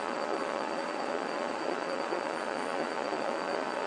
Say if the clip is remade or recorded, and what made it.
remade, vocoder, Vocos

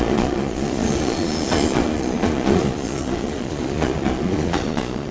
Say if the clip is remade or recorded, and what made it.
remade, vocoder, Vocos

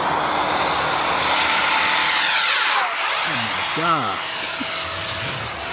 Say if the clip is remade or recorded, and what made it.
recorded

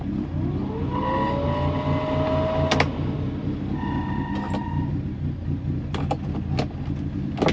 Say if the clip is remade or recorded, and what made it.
recorded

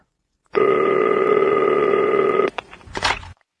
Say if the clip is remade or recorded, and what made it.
remade, vocoder, Vocos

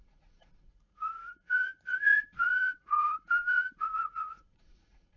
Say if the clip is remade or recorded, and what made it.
remade, vocoder, Vocos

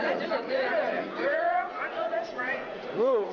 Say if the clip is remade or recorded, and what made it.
remade, vocoder, Vocos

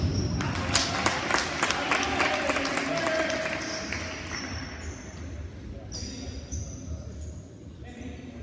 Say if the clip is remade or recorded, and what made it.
recorded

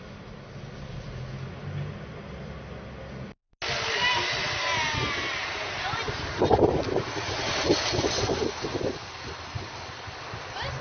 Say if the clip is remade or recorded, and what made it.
recorded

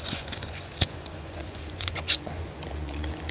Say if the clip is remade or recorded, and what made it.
remade, vocoder, Vocos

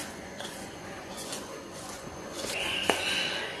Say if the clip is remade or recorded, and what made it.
remade, vocoder, Vocos